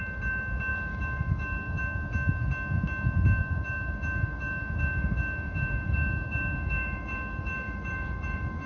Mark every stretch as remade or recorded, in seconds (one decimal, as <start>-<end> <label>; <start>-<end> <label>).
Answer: 0.0-0.7 recorded; 0.7-1.8 remade; 1.8-3.4 recorded; 3.4-8.7 remade